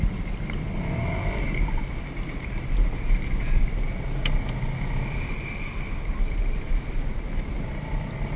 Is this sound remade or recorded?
recorded